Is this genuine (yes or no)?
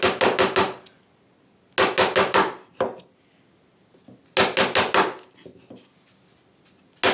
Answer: yes